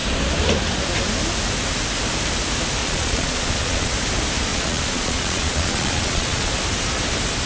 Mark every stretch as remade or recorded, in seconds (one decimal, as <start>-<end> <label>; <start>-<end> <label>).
0.0-2.8 recorded; 2.8-3.9 remade; 3.9-4.5 recorded; 4.5-6.5 remade; 6.5-7.5 recorded